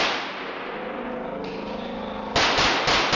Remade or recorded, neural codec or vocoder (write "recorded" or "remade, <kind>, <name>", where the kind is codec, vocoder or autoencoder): recorded